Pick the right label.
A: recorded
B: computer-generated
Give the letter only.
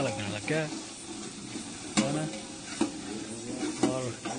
A